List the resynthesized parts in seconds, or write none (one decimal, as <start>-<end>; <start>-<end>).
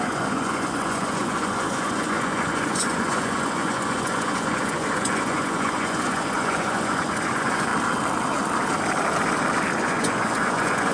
0.0-7.7; 9.8-10.9